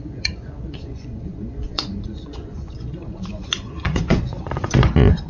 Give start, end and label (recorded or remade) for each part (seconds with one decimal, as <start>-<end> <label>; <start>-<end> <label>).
0.0-5.3 remade